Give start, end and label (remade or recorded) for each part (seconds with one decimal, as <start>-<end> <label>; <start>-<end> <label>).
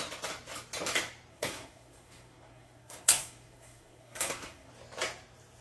0.0-1.3 recorded; 1.3-4.7 remade; 4.7-5.6 recorded